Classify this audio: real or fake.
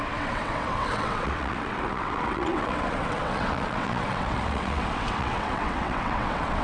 fake